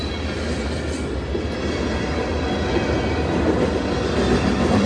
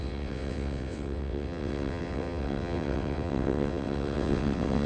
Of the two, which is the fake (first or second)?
second